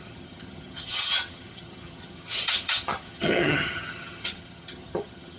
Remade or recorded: remade